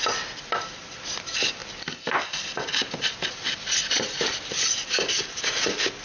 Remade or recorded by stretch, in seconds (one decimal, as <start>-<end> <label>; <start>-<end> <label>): 0.0-1.6 remade; 1.6-5.2 recorded; 5.2-6.0 remade